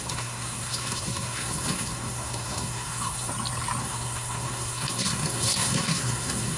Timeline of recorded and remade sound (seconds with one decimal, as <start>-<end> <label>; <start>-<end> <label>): 0.0-3.3 remade; 3.3-3.8 recorded; 3.8-6.6 remade